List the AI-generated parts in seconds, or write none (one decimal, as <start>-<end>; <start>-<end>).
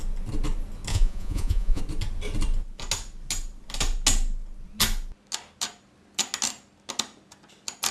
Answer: 0.9-1.8